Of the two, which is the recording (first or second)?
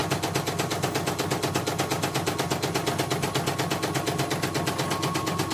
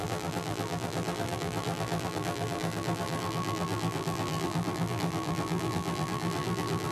first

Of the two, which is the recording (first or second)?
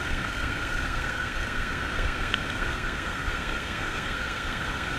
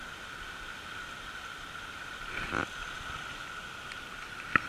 second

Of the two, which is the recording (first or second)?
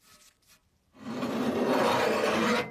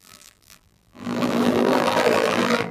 first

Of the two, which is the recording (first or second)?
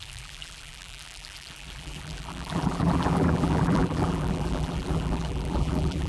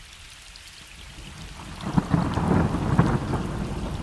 second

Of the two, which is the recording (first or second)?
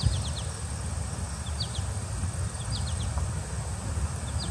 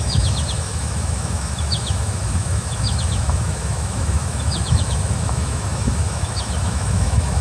first